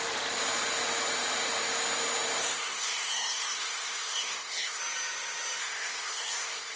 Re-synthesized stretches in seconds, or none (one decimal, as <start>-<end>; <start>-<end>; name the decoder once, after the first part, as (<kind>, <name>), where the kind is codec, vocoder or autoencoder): 2.4-4.8 (codec, SNAC); 5.6-6.8